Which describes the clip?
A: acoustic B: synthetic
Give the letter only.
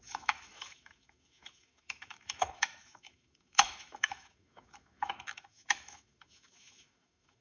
B